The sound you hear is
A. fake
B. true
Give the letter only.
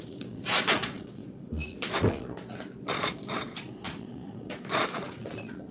A